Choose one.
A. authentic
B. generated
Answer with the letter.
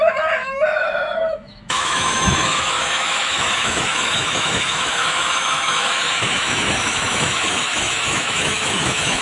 B